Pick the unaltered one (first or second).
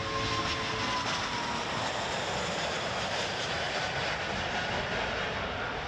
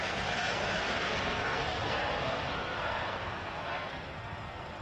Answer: first